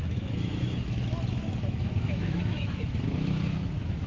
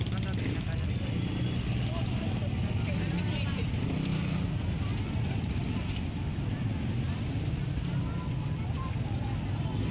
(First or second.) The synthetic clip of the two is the first